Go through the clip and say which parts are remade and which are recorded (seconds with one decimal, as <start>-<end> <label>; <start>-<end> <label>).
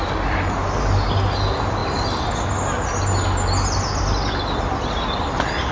0.0-5.7 recorded